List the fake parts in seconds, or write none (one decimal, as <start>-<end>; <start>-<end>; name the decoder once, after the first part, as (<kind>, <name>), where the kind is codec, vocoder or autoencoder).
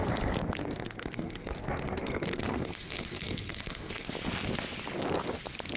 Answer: 0.6-4.1 (codec, SNAC)